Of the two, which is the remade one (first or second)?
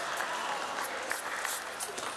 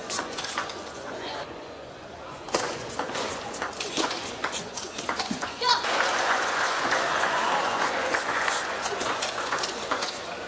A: second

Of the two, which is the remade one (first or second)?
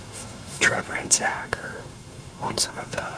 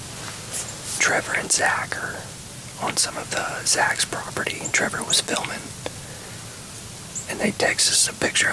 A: first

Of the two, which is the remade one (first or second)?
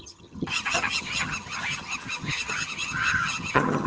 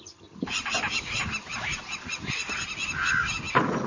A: first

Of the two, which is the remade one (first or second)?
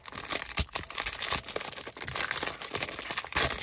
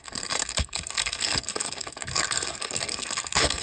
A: second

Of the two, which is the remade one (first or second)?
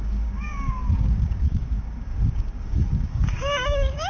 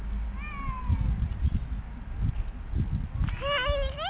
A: first